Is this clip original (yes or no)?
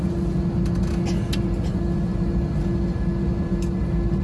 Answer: yes